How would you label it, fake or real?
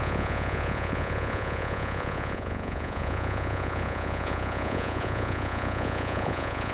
fake